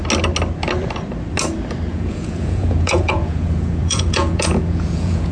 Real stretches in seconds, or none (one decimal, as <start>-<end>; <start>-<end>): 0.0-1.9